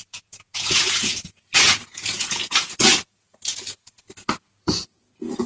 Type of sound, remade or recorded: remade